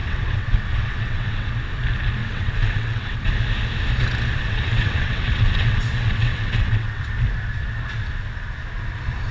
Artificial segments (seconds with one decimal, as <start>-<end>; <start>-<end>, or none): 0.0-1.5; 2.2-3.3; 4.4-7.1